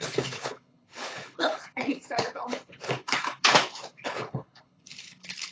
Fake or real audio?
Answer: fake